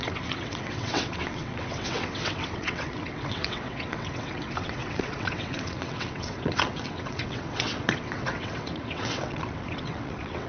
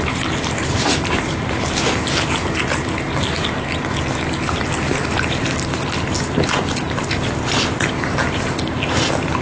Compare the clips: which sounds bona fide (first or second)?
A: second